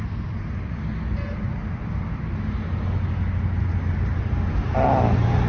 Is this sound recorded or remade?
recorded